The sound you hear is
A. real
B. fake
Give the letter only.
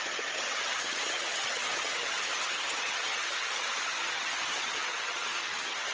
B